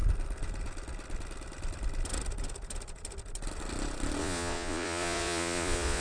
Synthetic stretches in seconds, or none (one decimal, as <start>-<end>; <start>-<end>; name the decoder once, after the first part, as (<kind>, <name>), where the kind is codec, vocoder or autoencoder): 4.2-6.0 (vocoder, Vocos)

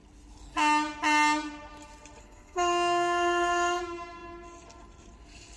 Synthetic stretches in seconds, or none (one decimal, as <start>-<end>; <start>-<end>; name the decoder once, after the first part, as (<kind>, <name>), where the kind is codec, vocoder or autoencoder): 2.2-3.8 (codec, SNAC)

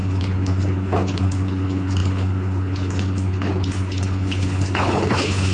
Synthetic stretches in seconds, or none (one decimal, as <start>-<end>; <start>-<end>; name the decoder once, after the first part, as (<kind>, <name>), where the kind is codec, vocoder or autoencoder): 0.0-5.5 (codec, HILCodec)